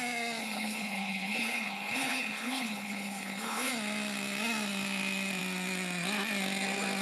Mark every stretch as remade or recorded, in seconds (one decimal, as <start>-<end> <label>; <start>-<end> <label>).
0.0-0.4 recorded; 0.4-3.7 remade; 3.7-7.0 recorded